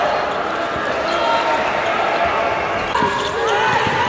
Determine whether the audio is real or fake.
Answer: real